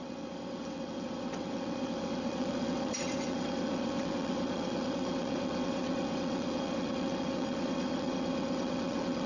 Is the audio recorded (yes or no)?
no